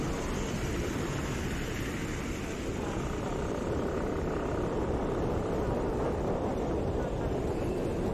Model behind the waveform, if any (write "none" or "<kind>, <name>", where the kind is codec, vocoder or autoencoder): none